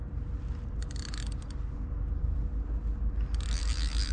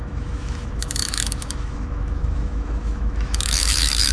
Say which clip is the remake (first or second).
second